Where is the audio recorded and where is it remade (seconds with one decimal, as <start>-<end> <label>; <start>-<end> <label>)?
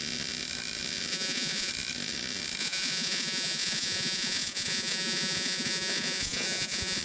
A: 0.0-1.1 recorded; 1.1-1.7 remade; 1.7-2.6 recorded; 2.6-7.0 remade